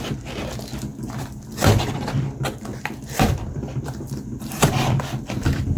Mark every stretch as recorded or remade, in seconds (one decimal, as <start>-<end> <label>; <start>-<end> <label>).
0.0-0.9 recorded; 0.9-1.9 remade; 1.9-2.7 recorded; 2.7-5.8 remade